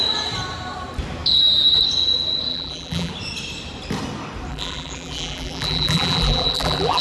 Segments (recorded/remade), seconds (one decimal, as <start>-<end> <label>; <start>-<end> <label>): 0.0-2.5 recorded; 2.5-3.1 remade; 3.1-4.5 recorded; 4.5-7.0 remade